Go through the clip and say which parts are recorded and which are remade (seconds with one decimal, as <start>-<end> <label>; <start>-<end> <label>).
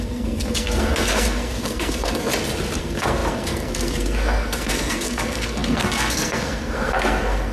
0.0-2.3 remade; 2.3-2.8 recorded; 2.8-7.5 remade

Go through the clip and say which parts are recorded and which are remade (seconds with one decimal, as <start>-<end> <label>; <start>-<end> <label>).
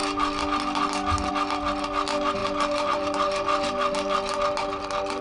0.0-5.2 recorded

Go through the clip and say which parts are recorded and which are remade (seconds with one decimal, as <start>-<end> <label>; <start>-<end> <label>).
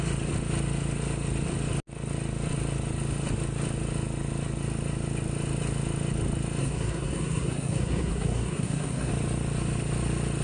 0.0-6.6 recorded; 6.6-9.1 remade; 9.1-10.4 recorded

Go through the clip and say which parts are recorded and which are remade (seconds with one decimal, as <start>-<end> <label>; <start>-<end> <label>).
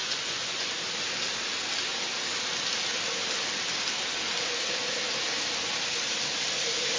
0.0-0.7 remade; 0.7-7.0 recorded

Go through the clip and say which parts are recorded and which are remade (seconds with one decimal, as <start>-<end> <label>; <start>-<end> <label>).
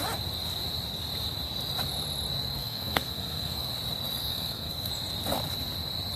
0.0-2.6 recorded; 2.6-3.7 remade; 3.7-4.2 recorded; 4.2-4.9 remade; 4.9-6.2 recorded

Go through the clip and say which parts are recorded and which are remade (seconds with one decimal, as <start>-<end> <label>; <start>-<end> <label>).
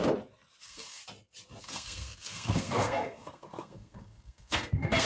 0.0-0.6 recorded; 0.6-1.0 remade; 1.0-1.6 recorded; 1.6-5.1 remade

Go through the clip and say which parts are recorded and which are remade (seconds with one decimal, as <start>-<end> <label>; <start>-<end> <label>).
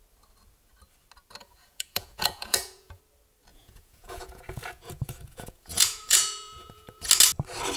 0.0-1.4 recorded; 1.4-3.0 remade; 3.0-3.5 recorded; 3.5-7.1 remade; 7.1-7.8 recorded